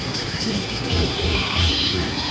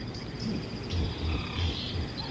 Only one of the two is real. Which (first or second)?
second